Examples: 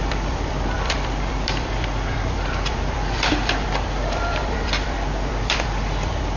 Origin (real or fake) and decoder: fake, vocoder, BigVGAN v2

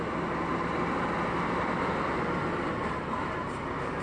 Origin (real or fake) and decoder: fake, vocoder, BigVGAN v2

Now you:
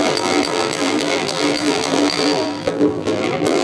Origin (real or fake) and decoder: fake, vocoder, BigVGAN v2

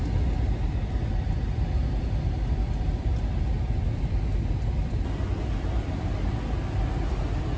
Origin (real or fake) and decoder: real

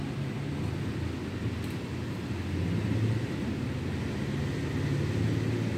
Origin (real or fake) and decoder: real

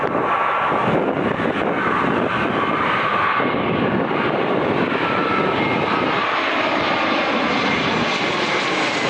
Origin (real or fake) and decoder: fake, vocoder, BigVGAN v2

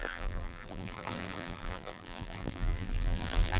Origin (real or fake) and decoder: fake, vocoder, BigVGAN v2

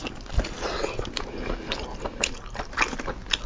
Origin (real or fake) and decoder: real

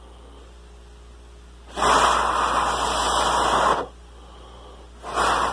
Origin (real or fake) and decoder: real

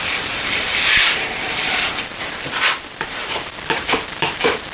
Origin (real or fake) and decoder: fake, vocoder, BigVGAN v2